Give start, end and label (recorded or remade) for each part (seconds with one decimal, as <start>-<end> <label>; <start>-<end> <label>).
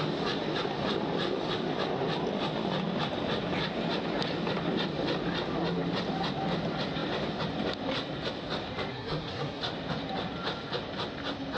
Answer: 0.0-8.9 recorded; 8.9-9.6 remade; 9.6-11.6 recorded